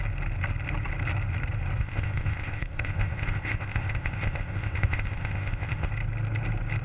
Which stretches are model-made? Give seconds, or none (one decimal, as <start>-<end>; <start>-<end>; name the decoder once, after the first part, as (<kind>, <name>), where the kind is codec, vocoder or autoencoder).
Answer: 1.8-5.9 (codec, ZipCodec)